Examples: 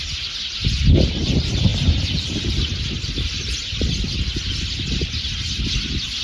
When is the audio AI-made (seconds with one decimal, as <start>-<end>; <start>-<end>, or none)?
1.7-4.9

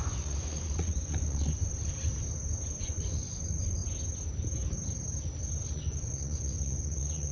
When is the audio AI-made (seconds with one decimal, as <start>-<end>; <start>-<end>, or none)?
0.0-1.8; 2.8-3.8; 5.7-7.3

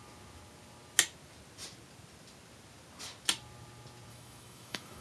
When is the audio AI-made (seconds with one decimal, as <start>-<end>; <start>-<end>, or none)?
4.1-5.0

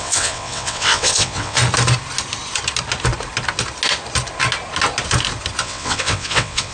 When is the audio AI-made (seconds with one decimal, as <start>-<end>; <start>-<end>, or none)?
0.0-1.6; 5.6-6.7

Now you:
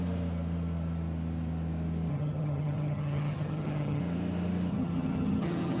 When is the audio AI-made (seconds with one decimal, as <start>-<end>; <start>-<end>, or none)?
2.1-4.0; 4.7-5.8

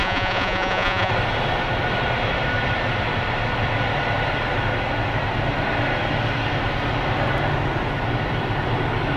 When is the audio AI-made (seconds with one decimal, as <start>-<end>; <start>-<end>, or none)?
0.0-1.1

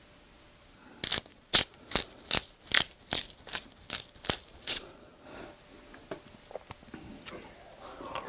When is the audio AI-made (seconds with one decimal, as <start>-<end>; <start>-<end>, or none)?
1.3-1.9; 4.5-5.2

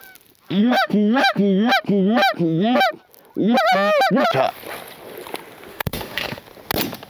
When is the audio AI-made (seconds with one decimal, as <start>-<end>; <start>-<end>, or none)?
0.6-1.7; 5.7-6.4